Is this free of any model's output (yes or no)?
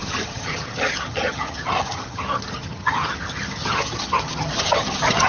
no